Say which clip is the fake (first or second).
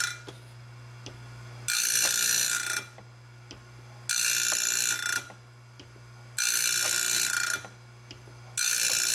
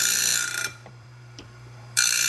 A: second